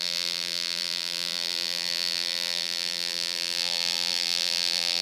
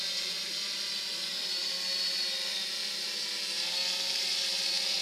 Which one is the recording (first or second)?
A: second